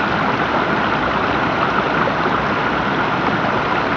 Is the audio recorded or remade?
recorded